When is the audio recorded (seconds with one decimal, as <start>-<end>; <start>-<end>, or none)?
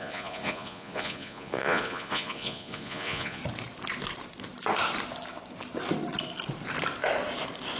3.4-7.8